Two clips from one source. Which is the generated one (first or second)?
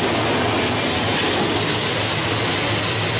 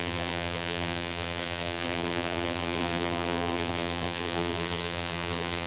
second